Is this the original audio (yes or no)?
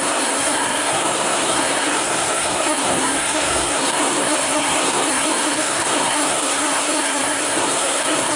no